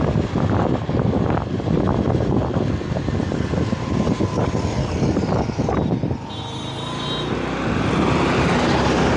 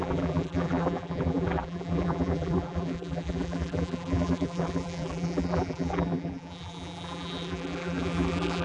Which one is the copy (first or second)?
second